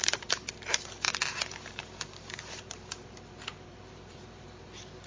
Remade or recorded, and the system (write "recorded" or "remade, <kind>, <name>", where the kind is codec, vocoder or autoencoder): remade, vocoder, BigVGAN v2